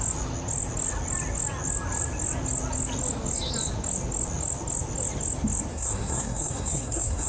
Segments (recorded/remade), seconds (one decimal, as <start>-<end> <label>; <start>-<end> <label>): 0.0-5.7 recorded; 5.7-7.3 remade